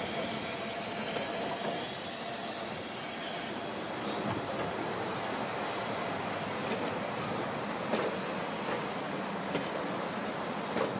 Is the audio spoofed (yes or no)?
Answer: no